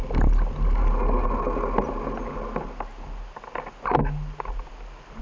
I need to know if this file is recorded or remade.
recorded